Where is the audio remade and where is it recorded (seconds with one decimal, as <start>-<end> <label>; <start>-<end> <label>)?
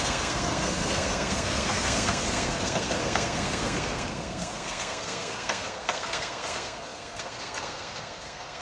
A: 0.0-8.6 remade